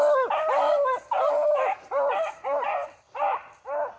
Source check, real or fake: real